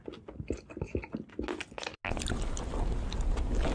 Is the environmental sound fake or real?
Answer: real